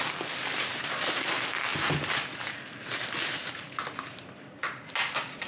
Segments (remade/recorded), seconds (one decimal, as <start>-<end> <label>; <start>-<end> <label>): 0.0-5.5 recorded